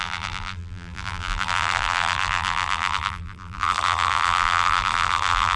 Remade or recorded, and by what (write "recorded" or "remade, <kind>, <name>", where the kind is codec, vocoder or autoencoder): remade, vocoder, BigVGAN v2